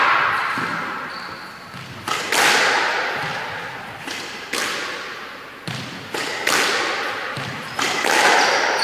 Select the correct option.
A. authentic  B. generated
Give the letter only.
A